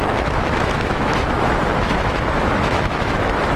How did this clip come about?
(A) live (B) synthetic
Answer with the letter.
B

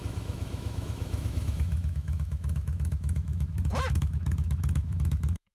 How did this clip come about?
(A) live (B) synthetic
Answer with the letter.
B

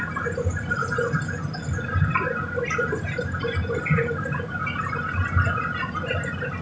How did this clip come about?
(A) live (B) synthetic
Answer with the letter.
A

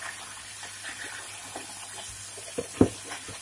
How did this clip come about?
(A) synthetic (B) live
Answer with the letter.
B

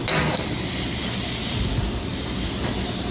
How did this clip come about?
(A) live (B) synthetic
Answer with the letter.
A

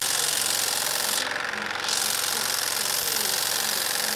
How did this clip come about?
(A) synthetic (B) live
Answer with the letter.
B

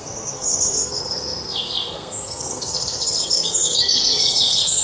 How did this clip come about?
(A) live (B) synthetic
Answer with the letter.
B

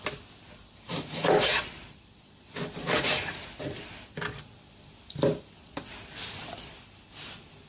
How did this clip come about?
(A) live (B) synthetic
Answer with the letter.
B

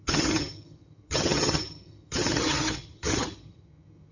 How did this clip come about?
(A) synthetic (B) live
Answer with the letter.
A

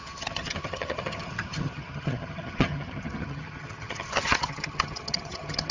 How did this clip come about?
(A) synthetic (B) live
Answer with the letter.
A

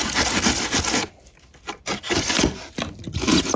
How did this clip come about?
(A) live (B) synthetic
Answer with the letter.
A